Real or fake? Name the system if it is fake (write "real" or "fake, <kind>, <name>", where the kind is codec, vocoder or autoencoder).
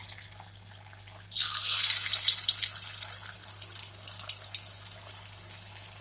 real